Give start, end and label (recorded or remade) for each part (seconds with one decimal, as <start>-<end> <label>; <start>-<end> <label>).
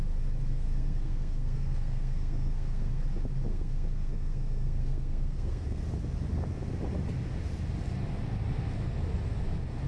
0.0-0.5 recorded; 0.5-3.0 remade; 3.0-3.5 recorded; 3.5-5.8 remade; 5.8-9.9 recorded